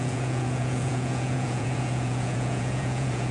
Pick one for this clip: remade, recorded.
remade